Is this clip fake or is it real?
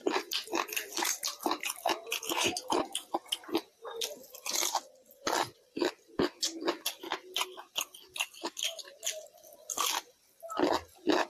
real